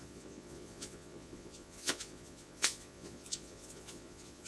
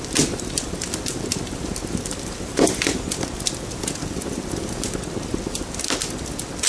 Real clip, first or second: second